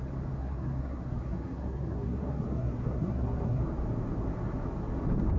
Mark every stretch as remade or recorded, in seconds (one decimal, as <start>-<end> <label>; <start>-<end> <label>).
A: 0.0-0.4 recorded; 0.4-3.6 remade; 3.6-5.4 recorded